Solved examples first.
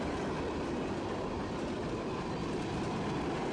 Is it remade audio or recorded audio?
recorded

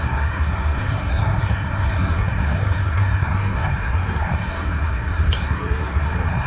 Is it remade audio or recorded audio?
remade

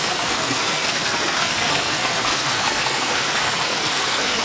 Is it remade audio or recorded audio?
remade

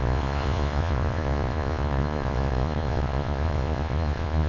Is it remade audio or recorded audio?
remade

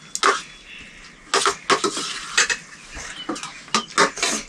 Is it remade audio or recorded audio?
recorded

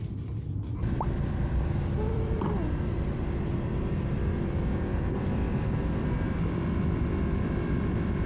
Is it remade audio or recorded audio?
remade